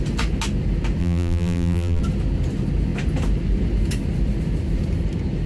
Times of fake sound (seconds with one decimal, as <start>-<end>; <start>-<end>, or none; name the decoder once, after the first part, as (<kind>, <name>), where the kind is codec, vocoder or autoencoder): 1.0-2.0 (vocoder, BigVGAN v2)